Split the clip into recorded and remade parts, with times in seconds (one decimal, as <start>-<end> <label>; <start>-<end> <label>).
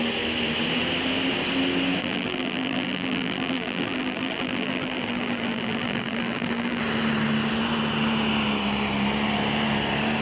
0.0-2.0 recorded; 2.0-6.8 remade; 6.8-10.2 recorded